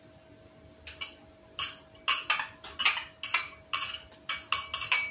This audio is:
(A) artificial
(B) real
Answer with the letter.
B